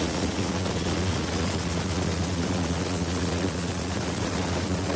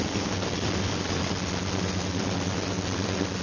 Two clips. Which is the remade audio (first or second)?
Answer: first